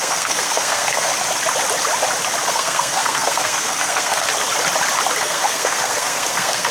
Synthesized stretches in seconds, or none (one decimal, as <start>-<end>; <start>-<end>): 0.0-1.1; 2.5-4.3; 5.2-6.7